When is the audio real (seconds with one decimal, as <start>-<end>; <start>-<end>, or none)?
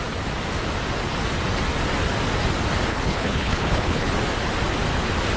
0.0-2.9; 4.1-5.4